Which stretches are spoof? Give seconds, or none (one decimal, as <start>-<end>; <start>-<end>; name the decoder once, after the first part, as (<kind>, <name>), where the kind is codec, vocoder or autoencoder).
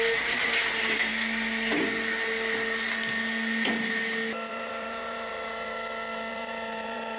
0.0-1.1 (vocoder, BigVGAN v2); 4.5-5.7; 6.3-7.2